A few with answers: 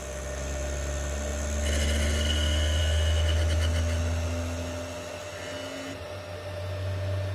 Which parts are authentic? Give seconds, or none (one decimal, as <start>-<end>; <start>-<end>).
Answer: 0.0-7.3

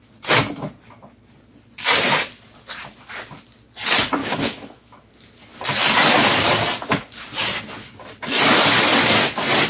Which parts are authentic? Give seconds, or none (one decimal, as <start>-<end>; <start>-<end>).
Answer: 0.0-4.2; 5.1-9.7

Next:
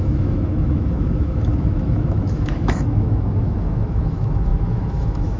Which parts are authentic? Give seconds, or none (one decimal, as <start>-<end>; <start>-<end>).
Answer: none